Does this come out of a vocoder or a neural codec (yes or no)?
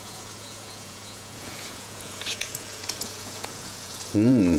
yes